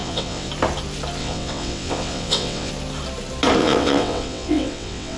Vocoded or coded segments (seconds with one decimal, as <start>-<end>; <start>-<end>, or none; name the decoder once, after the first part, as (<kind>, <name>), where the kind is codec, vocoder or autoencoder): 0.0-0.5 (vocoder, WaveNeXt); 1.2-2.7; 3.6-5.2